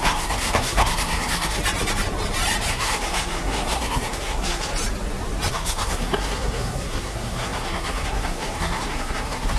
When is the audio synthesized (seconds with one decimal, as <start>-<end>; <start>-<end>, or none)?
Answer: 0.0-1.6; 2.7-4.7; 5.5-9.6